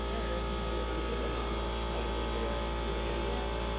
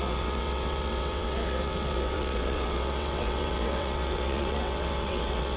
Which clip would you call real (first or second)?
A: first